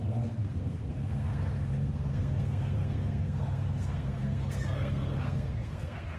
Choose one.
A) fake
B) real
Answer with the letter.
A